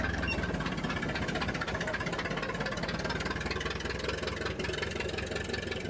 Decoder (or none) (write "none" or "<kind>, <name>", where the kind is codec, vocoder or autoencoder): none